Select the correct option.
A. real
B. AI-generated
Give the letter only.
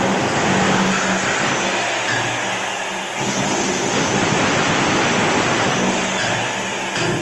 A